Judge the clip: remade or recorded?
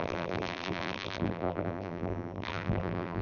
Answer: remade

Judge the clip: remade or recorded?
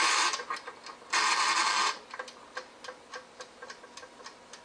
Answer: recorded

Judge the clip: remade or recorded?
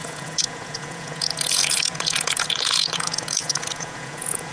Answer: remade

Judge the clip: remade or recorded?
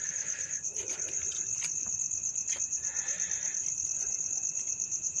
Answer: remade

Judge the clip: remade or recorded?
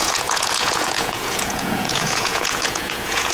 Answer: remade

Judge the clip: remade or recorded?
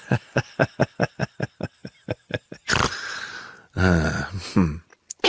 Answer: recorded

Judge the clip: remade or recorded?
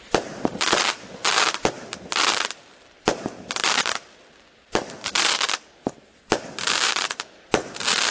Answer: recorded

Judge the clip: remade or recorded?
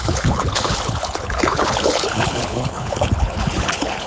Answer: remade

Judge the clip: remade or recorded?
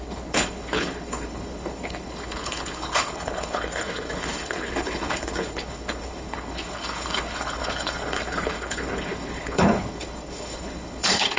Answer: remade